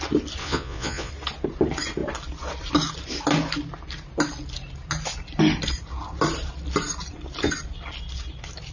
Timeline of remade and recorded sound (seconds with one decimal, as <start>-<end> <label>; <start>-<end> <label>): 0.0-0.4 recorded; 0.4-1.1 remade; 1.1-8.7 recorded